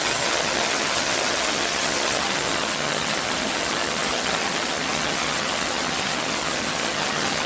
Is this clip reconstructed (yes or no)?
yes